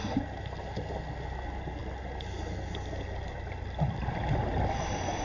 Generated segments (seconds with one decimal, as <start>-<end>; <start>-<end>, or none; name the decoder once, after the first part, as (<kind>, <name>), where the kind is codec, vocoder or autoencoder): none